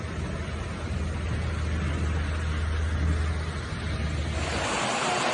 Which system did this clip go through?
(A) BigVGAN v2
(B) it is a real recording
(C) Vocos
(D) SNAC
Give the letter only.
B